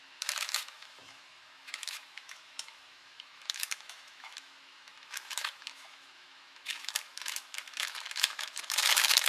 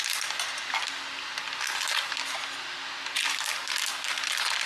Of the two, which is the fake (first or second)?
first